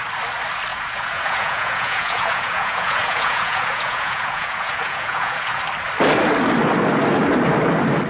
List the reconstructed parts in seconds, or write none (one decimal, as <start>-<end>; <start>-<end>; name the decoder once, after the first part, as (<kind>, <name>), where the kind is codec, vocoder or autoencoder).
0.7-5.6 (vocoder, Vocos)